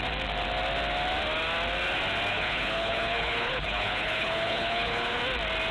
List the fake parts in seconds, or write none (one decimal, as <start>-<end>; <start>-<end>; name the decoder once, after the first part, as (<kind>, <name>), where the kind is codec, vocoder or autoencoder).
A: 2.3-5.2 (codec, HILCodec)